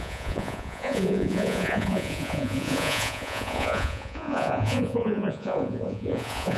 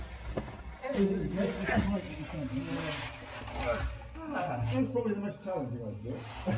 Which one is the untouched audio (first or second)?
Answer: second